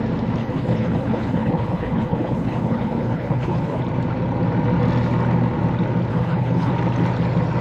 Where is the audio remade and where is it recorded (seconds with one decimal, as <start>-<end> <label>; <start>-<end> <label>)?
0.0-0.4 recorded; 0.4-3.8 remade; 3.8-6.1 recorded; 6.1-6.7 remade; 6.7-7.6 recorded